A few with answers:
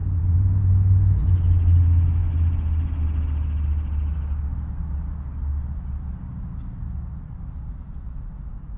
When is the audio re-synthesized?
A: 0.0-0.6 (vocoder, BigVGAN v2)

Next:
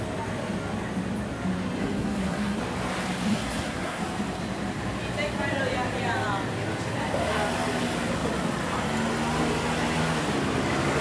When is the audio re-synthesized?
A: 1.8-2.6 (codec, SNAC); 3.3-4.0

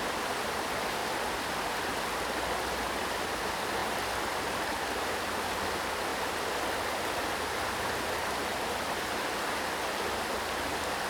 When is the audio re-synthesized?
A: none

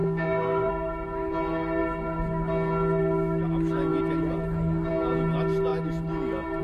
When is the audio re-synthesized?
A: 0.0-0.7 (codec, SNAC)

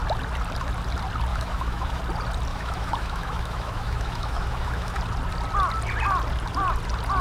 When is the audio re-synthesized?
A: 1.3-2.0 (autoencoder, DAC-VAE); 2.5-5.0

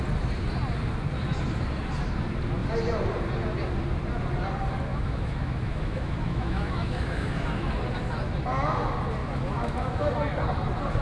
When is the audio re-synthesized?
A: 4.9-7.7 (autoencoder, DAC-VAE); 9.2-10.1

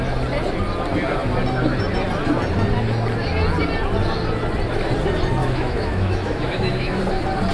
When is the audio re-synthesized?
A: 5.4-7.0 (autoencoder, DAC-VAE)